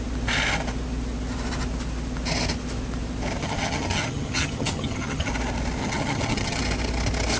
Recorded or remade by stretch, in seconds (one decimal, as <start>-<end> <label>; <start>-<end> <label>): 0.0-3.4 recorded; 3.4-5.3 remade; 5.3-5.8 recorded; 5.8-6.6 remade; 6.6-7.4 recorded